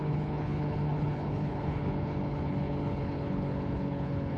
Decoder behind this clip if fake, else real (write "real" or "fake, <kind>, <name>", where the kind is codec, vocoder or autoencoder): fake, codec, HILCodec